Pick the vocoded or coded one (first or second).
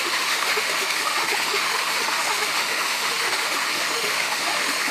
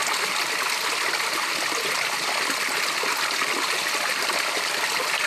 first